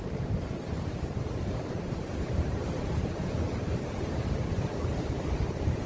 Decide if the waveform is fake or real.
fake